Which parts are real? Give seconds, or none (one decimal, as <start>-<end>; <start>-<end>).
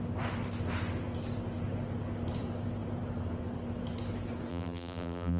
0.0-4.5